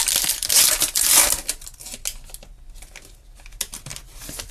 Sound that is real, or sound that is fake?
real